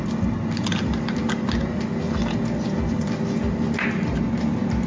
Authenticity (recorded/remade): recorded